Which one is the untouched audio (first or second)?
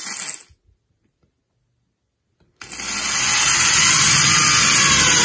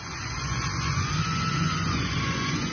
first